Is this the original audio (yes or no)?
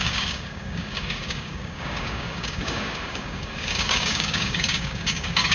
no